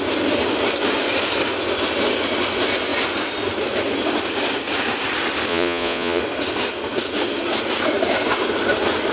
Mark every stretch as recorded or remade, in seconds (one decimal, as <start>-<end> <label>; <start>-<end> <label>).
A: 0.0-5.5 recorded; 5.5-6.2 remade; 6.2-9.1 recorded